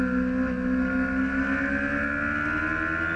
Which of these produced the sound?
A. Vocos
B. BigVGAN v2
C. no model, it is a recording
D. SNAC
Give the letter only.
C